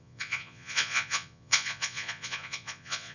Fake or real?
fake